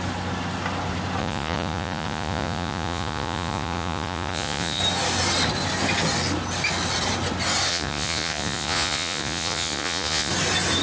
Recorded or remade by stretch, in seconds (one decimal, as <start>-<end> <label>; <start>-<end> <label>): 0.0-1.2 recorded; 1.2-4.8 remade; 4.8-7.7 recorded; 7.7-10.3 remade; 10.3-10.8 recorded